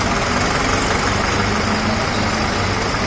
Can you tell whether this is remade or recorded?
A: recorded